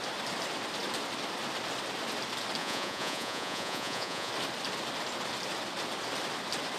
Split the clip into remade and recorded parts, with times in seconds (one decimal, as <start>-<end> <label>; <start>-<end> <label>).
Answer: 0.0-2.6 recorded; 2.6-4.3 remade; 4.3-6.8 recorded